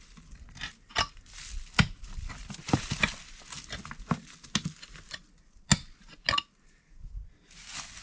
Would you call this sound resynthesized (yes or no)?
no